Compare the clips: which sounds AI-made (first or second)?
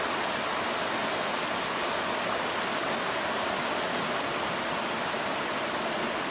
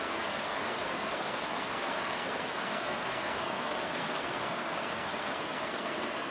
second